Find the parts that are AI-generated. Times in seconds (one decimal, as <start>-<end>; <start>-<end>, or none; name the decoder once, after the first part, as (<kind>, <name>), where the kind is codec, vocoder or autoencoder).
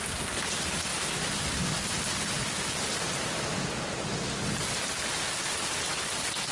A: none